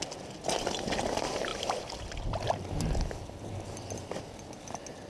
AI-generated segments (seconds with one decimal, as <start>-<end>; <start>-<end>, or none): none